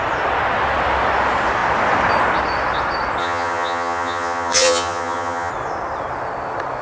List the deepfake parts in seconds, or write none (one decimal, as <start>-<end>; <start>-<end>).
3.2-5.5